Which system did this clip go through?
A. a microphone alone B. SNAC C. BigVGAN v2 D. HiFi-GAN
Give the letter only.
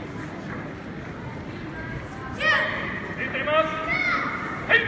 A